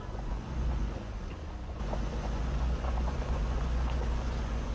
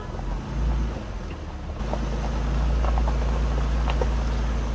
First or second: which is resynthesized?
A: first